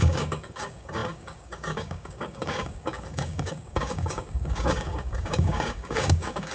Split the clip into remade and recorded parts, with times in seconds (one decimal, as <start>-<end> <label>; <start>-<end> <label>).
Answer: 0.0-6.5 remade